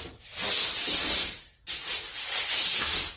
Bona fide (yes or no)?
yes